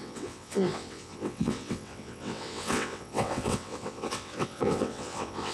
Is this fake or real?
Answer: fake